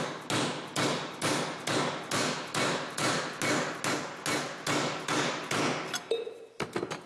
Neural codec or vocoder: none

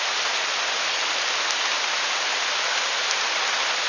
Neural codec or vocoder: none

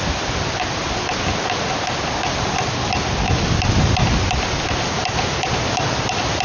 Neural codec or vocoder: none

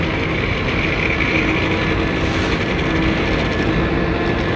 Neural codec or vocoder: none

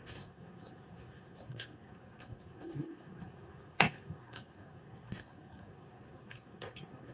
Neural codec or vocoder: codec, SNAC